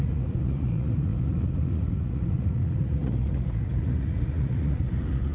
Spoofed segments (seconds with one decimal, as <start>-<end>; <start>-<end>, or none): 0.0-5.3